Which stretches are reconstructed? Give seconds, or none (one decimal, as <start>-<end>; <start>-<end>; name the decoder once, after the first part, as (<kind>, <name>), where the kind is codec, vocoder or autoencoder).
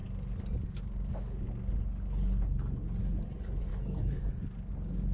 3.7-4.3 (autoencoder, DAC-VAE)